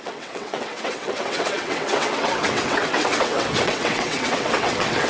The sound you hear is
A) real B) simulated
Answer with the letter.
B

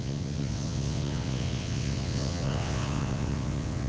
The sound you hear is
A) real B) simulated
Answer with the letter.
B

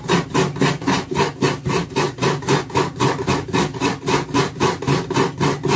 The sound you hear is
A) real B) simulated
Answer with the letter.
A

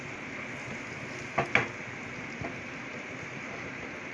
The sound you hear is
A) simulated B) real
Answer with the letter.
B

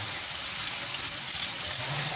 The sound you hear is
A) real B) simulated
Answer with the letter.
B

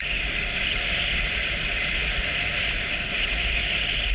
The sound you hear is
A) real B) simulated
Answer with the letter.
A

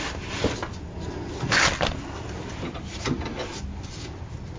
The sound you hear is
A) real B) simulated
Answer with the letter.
A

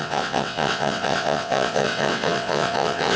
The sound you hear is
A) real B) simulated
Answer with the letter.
B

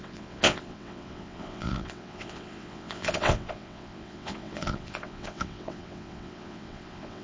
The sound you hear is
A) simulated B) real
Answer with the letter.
A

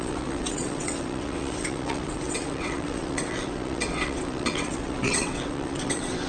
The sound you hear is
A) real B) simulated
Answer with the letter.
B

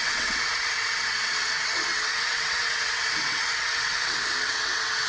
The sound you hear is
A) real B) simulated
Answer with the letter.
B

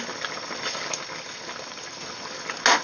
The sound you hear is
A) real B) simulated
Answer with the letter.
A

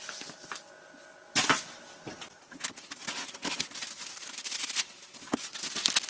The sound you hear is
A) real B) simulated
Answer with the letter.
A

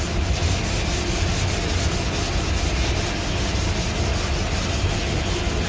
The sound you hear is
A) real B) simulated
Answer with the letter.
A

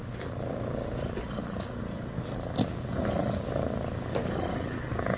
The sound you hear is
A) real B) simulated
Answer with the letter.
A